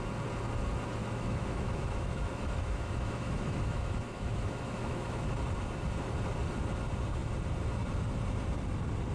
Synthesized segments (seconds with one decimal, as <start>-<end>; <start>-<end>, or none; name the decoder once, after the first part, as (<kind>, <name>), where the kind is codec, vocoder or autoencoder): 1.0-5.4 (autoencoder, DAC-VAE)